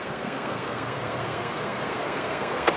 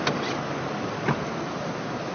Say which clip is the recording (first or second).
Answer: second